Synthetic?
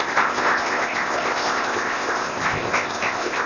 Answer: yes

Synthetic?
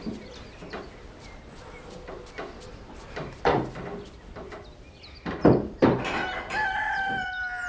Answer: no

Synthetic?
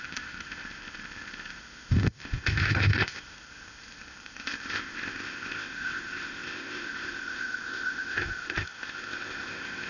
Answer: yes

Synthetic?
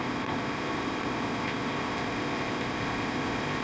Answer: yes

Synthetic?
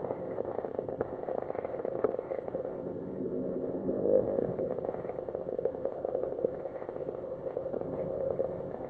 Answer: yes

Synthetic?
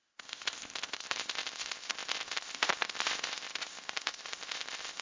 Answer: yes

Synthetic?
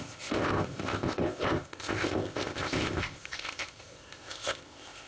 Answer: yes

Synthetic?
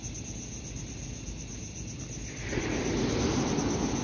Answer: no